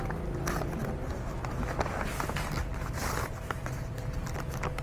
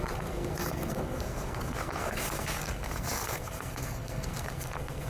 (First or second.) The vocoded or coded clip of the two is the second